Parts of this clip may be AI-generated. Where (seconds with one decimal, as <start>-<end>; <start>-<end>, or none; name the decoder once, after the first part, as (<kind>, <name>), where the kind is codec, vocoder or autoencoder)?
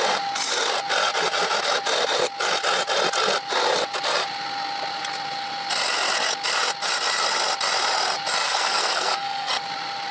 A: 8.4-9.5 (codec, SNAC)